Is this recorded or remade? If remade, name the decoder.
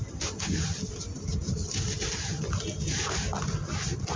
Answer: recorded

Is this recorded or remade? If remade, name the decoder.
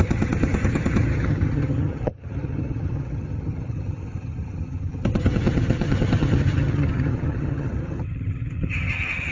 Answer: remade, vocoder, HiFi-GAN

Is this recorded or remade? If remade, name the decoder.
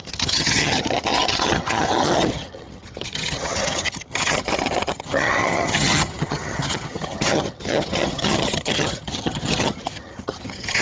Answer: remade, vocoder, HiFi-GAN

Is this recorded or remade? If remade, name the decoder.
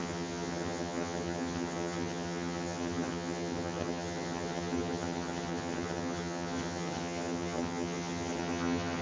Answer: remade, vocoder, HiFi-GAN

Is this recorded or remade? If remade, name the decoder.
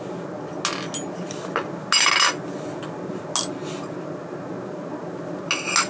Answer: recorded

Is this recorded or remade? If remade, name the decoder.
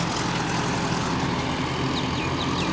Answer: recorded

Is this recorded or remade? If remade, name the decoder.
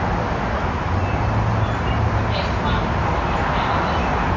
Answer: recorded